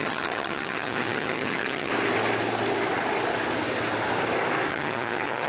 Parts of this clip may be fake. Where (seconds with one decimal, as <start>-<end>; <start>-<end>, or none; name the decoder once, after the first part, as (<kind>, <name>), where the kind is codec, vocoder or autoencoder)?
0.0-1.9 (vocoder, HiFi-GAN); 4.7-5.5